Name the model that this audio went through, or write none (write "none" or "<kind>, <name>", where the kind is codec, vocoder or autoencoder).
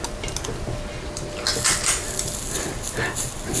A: none